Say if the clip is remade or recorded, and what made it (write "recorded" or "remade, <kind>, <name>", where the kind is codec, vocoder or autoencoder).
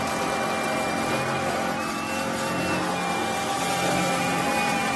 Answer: recorded